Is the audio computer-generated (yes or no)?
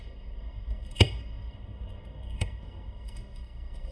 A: yes